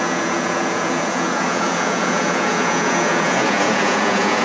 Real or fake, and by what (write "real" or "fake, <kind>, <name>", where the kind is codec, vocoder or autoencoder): fake, vocoder, Vocos